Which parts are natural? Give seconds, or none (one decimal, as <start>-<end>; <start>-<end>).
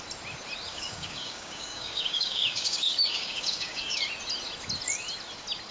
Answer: 0.0-0.7; 4.1-5.7